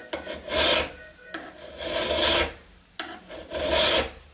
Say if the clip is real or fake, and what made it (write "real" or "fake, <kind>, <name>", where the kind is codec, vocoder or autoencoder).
real